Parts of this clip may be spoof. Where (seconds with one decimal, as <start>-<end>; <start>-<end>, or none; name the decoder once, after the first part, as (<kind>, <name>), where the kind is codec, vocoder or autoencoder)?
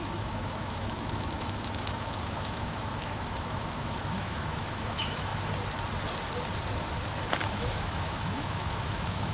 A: 0.0-5.3 (autoencoder, DAC-VAE); 7.5-9.3